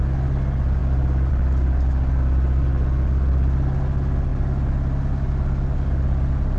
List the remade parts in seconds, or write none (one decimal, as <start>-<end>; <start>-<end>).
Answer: none